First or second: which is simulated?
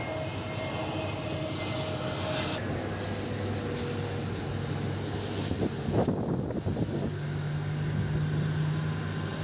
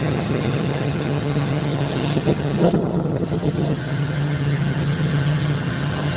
second